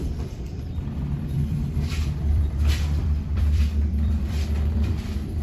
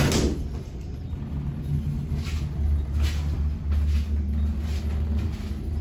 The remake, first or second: first